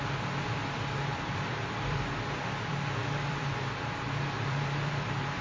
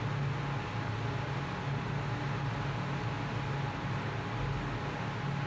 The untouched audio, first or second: second